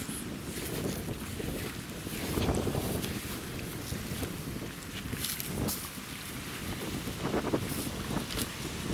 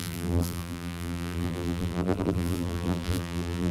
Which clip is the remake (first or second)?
second